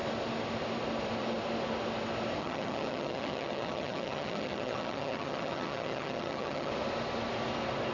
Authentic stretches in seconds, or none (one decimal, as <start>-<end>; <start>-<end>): 0.0-2.4; 6.7-7.9